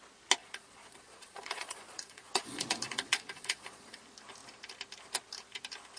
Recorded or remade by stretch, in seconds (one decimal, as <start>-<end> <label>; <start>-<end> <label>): 0.0-0.4 recorded; 0.4-4.0 remade; 4.0-6.0 recorded